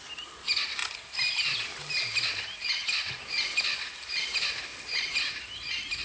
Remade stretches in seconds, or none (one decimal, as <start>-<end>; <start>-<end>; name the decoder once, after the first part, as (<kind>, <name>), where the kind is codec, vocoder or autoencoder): 0.0-3.7 (vocoder, BigVGAN v2); 4.2-6.0